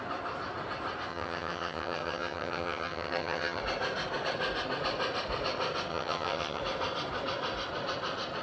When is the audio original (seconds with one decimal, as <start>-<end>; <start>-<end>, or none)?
0.0-1.1; 3.6-5.9; 6.6-8.4